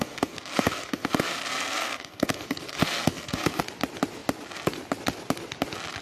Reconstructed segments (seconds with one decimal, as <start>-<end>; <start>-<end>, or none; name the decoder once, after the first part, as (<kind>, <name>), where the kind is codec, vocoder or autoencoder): 0.0-3.6 (codec, SNAC)